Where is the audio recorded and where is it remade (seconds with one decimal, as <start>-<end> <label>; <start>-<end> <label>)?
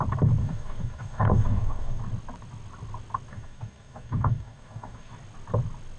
0.0-0.4 recorded; 0.4-2.0 remade; 2.0-3.3 recorded; 3.3-5.1 remade; 5.1-6.0 recorded